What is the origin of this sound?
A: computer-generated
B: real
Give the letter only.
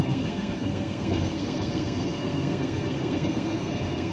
A